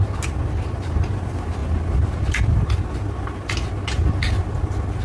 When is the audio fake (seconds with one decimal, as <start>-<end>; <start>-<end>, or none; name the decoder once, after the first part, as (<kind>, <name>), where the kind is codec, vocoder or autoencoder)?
none